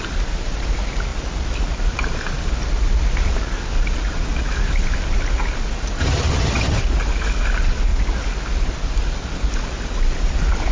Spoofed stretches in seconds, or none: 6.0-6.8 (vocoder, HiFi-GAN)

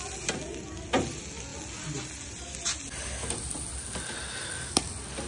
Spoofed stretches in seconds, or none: none

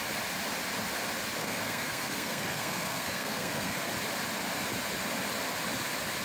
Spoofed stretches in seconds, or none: 1.4-3.9 (codec, SNAC)

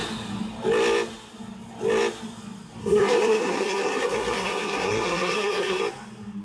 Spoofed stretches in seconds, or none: 2.8-5.8 (codec, SNAC)

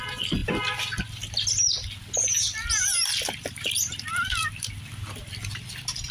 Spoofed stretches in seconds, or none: none

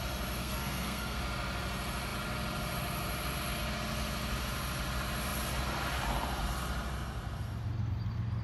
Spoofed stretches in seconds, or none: 0.4-1.2 (codec, SNAC)

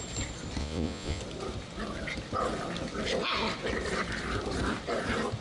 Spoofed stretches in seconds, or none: 0.6-1.2 (vocoder, Vocos)

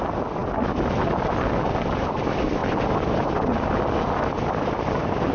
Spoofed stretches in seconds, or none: none